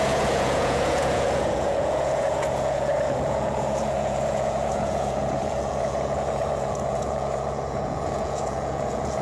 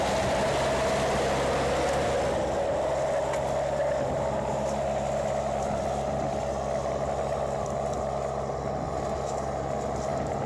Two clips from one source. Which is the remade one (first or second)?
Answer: first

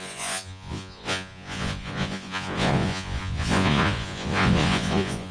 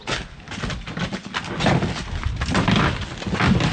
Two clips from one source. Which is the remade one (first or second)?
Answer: first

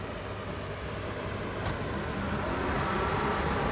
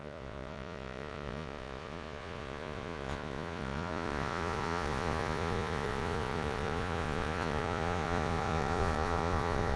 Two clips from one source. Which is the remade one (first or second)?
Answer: second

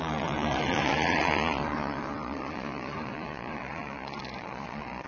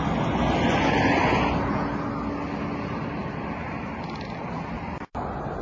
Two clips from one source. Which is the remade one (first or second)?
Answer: first